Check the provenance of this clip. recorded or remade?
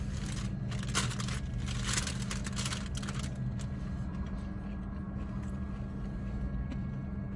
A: recorded